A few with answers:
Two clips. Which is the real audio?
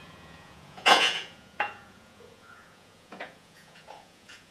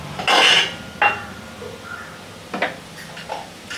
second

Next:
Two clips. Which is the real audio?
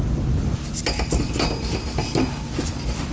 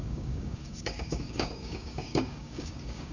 first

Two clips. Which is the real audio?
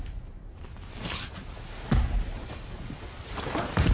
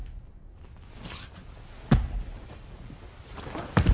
second